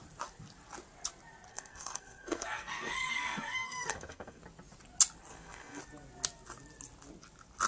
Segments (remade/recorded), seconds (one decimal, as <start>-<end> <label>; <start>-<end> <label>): 0.0-1.5 recorded; 1.5-4.4 remade; 4.4-5.3 recorded; 5.3-5.8 remade; 5.8-7.7 recorded